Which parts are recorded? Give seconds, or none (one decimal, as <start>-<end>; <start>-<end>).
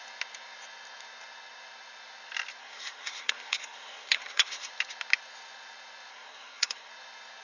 0.0-2.6; 4.7-6.1; 6.9-7.4